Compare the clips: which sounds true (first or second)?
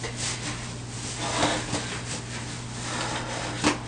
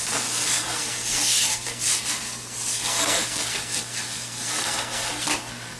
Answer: first